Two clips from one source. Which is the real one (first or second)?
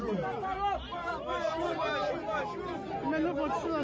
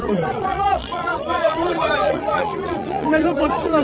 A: first